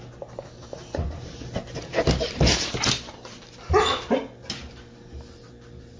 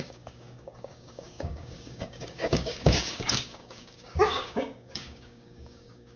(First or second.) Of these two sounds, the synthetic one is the second